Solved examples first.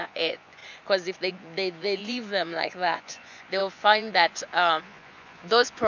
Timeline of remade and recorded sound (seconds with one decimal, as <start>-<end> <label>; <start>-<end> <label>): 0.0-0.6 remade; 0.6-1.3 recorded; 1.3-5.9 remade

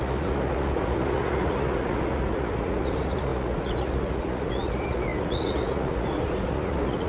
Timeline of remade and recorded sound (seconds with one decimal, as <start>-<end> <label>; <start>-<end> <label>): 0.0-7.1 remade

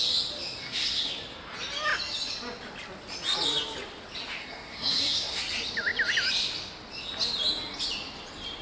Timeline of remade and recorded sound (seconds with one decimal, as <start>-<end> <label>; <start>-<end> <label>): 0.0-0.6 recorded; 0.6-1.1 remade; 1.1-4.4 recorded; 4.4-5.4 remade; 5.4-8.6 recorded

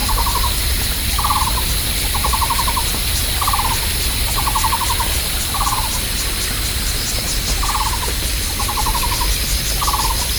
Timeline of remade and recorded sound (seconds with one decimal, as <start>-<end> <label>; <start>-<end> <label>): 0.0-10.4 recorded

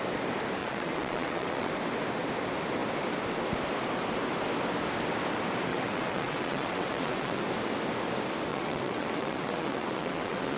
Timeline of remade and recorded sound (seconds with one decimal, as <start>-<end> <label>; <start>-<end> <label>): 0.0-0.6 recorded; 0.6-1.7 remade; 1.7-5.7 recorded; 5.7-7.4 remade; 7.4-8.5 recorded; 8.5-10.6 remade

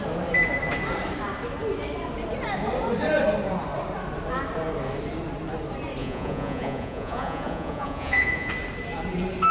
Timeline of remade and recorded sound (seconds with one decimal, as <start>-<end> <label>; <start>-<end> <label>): 0.0-6.0 recorded; 6.0-8.5 remade; 8.5-9.5 recorded

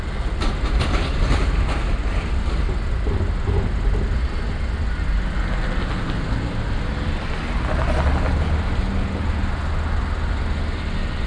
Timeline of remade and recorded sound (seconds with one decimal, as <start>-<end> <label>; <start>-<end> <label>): 0.0-11.3 recorded

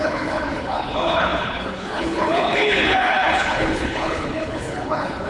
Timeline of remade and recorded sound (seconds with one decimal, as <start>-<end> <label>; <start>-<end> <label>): 0.0-5.3 remade